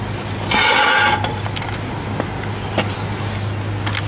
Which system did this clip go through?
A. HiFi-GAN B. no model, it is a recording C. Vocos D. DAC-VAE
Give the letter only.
B